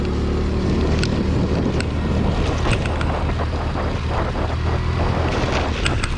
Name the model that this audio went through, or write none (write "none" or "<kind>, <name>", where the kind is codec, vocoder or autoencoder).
none